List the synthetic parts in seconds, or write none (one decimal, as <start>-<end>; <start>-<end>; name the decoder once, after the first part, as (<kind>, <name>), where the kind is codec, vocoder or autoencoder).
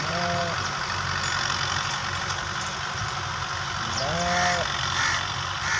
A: none